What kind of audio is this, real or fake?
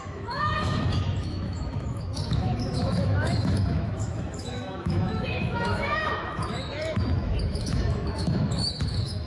fake